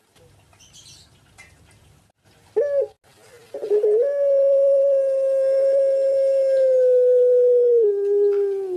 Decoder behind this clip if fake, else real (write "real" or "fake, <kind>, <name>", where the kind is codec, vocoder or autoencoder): real